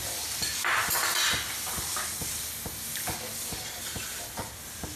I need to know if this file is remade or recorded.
recorded